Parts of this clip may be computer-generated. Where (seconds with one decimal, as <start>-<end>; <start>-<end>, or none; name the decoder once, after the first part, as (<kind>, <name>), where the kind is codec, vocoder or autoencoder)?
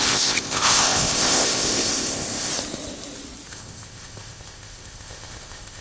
0.0-2.5 (codec, ZipCodec); 3.5-5.8